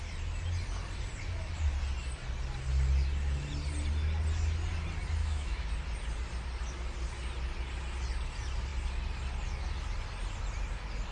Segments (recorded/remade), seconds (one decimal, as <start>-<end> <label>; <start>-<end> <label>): 0.0-5.2 recorded; 5.2-5.7 remade; 5.7-11.1 recorded